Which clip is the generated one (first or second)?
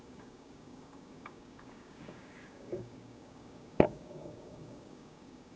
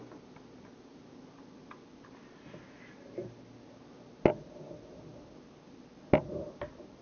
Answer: first